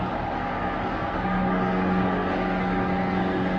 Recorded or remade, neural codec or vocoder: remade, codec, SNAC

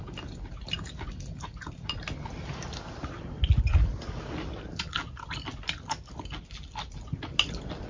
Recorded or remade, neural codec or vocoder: recorded